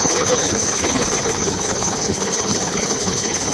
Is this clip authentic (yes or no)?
no